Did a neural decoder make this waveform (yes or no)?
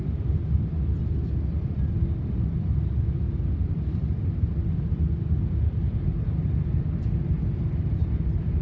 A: no